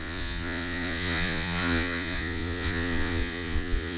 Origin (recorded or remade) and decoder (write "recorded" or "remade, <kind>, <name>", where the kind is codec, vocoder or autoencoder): remade, vocoder, Vocos